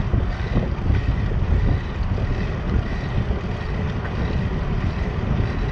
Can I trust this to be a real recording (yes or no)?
yes